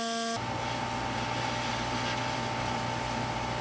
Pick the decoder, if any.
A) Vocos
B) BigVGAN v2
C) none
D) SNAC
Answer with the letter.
C